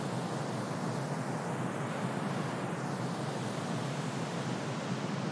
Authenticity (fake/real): real